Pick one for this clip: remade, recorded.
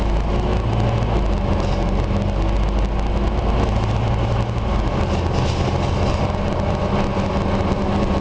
recorded